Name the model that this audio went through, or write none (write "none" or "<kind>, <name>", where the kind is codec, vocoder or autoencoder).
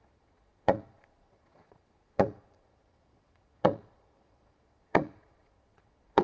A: vocoder, Vocos